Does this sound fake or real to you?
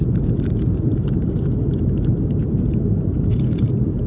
fake